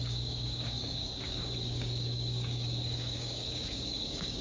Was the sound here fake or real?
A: fake